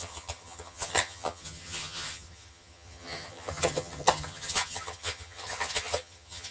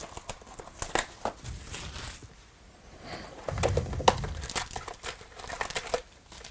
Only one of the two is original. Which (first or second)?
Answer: second